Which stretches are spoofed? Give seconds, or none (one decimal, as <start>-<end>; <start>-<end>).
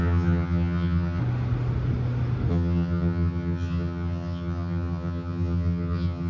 0.0-1.2; 2.5-6.3